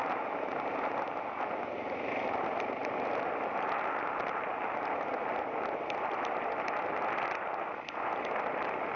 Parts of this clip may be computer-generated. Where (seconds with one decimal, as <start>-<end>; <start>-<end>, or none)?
none